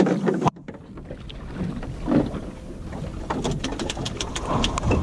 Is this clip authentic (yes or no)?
yes